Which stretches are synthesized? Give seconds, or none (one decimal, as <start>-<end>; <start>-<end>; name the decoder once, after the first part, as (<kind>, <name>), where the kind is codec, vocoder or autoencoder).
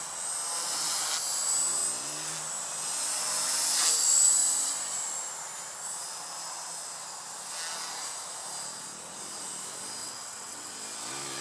10.0-10.7 (vocoder, WaveNeXt)